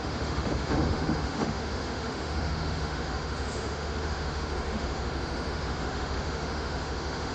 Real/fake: fake